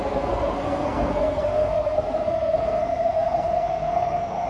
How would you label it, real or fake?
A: fake